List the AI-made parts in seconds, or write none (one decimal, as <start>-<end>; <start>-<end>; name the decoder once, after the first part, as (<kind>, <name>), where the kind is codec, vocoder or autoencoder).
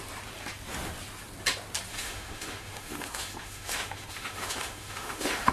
1.9-5.5 (autoencoder, DAC-VAE)